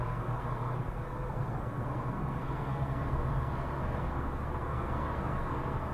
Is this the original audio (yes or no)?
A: no